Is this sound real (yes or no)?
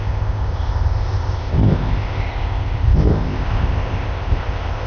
no